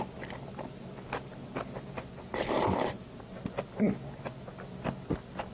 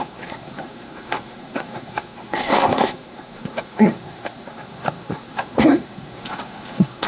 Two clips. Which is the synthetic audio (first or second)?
second